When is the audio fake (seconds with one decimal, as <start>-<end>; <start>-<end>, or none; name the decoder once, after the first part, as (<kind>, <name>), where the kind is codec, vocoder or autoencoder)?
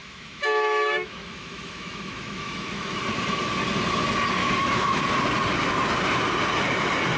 0.0-3.0 (autoencoder, DAC-VAE); 4.4-5.0